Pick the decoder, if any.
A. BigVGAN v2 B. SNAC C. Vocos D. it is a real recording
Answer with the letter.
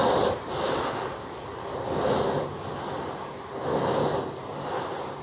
D